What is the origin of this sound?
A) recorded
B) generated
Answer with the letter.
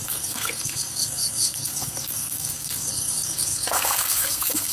B